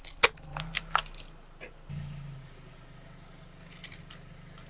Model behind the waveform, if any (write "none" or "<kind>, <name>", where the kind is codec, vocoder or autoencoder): none